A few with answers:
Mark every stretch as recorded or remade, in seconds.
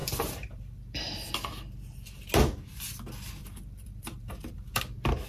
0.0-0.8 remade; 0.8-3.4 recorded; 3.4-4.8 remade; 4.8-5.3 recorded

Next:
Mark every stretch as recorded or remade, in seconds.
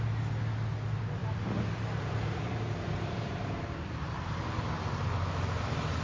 0.0-1.2 recorded; 1.2-3.7 remade; 3.7-6.0 recorded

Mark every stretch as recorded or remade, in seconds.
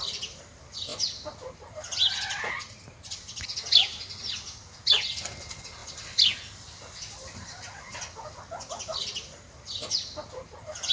0.0-10.9 recorded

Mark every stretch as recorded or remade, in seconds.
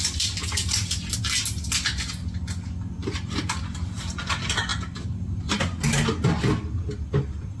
0.0-4.7 recorded; 4.7-5.5 remade; 5.5-7.6 recorded